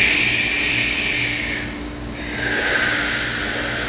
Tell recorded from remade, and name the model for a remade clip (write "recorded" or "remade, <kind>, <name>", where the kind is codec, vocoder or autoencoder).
recorded